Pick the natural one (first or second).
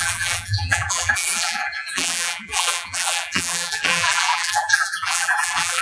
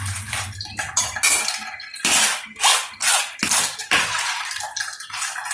second